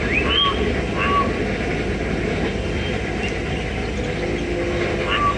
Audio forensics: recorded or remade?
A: recorded